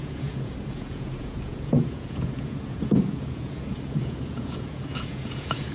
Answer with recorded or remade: remade